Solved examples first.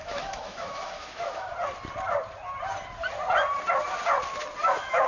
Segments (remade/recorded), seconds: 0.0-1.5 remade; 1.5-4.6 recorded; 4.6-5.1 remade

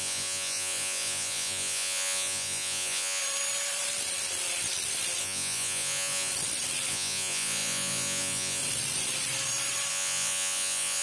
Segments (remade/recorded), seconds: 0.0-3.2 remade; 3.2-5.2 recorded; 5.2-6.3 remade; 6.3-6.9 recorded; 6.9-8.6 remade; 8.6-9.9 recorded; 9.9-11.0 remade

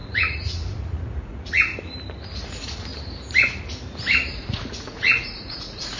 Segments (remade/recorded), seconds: 0.0-1.7 remade; 1.7-2.4 recorded; 2.4-2.9 remade; 2.9-4.3 recorded; 4.3-6.0 remade